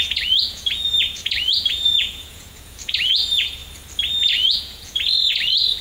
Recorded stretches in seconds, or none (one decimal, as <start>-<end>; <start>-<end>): 3.6-4.2